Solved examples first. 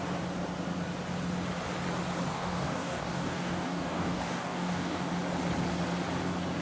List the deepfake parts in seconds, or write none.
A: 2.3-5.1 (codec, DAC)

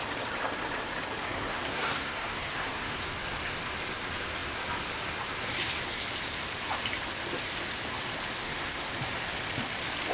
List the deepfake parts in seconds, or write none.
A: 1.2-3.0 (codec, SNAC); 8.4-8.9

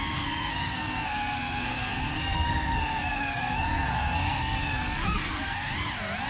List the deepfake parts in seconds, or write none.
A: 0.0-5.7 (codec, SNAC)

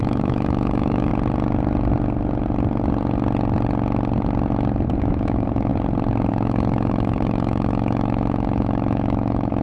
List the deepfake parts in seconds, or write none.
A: 0.0-1.1 (autoencoder, DAC-VAE); 5.0-5.7; 6.3-9.6